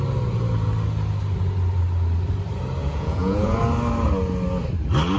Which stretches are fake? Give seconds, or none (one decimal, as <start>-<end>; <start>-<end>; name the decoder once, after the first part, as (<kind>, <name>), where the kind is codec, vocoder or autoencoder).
2.8-3.6 (vocoder, Vocos)